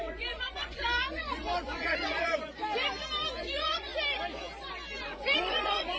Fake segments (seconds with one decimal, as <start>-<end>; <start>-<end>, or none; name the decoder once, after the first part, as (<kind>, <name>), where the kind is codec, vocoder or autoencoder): 0.0-2.6 (vocoder, Vocos); 3.4-3.9; 5.0-6.0